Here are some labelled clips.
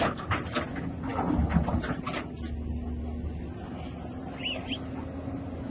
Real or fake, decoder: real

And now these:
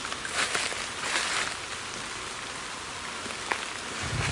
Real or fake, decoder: real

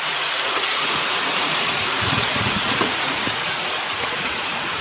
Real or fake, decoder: fake, vocoder, Vocos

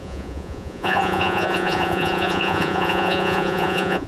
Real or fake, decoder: fake, vocoder, Vocos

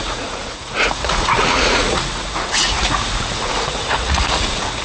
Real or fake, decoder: fake, vocoder, Vocos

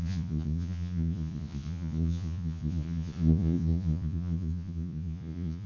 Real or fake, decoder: fake, vocoder, Vocos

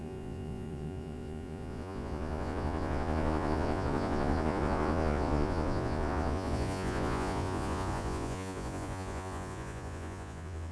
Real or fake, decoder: fake, vocoder, Vocos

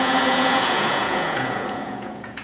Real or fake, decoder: fake, vocoder, Vocos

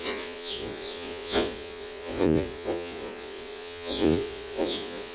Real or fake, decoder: fake, vocoder, Vocos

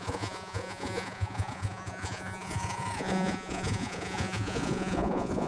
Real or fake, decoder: fake, vocoder, Vocos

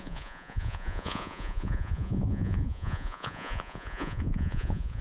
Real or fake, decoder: fake, vocoder, Vocos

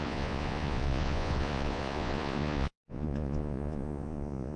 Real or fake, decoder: fake, vocoder, Vocos